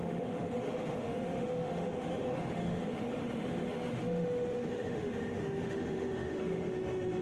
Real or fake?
fake